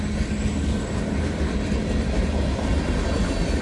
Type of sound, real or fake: real